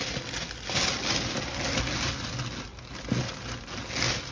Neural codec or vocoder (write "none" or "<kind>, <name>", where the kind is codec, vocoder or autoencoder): none